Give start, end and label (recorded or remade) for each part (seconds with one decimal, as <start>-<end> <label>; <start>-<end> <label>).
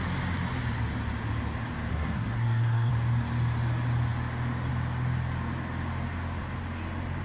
0.0-1.9 recorded; 1.9-2.9 remade; 2.9-7.2 recorded